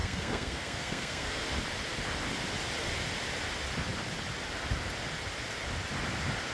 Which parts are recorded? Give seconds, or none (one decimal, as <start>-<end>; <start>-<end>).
1.5-6.5